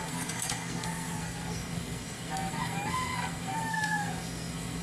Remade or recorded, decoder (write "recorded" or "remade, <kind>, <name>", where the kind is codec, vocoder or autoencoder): remade, codec, SNAC